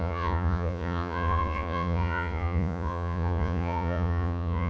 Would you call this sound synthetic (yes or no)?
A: yes